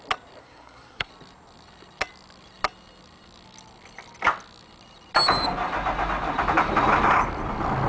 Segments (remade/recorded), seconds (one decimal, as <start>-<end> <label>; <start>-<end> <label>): 0.0-0.4 recorded; 0.4-1.1 remade; 1.1-7.9 recorded